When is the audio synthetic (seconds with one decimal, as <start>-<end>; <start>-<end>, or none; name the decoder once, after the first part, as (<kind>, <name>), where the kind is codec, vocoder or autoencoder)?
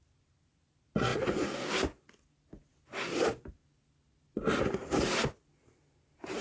none